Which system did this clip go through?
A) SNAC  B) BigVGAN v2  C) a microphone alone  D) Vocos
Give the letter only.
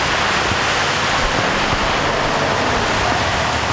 C